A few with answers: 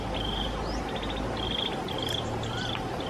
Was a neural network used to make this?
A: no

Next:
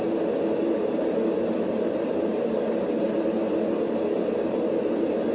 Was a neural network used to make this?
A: no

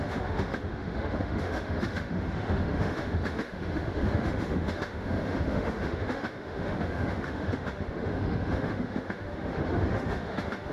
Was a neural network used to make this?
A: yes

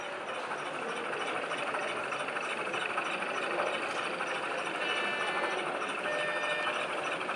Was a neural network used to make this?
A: no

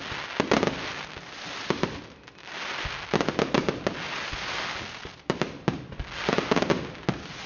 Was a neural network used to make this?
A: no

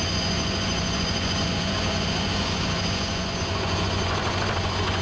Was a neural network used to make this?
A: yes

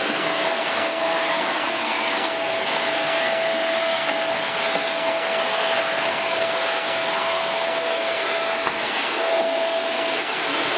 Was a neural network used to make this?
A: yes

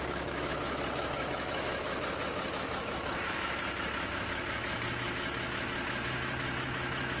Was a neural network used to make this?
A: yes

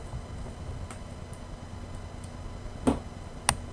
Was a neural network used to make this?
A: no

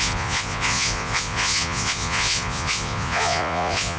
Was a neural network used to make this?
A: yes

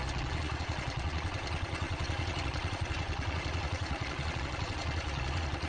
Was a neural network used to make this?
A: yes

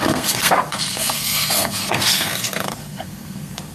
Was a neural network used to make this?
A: yes